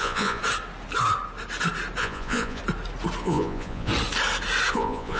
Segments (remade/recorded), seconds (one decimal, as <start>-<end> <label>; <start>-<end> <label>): 0.0-0.4 remade; 0.4-2.0 recorded; 2.0-2.6 remade; 2.6-3.2 recorded; 3.2-3.9 remade; 3.9-4.7 recorded; 4.7-5.2 remade